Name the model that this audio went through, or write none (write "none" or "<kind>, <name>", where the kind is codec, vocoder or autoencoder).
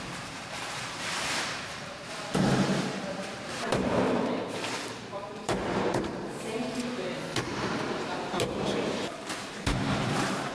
vocoder, BigVGAN v2